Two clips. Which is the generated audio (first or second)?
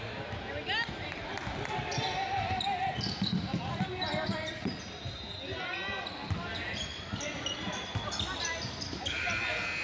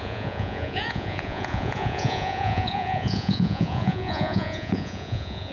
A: second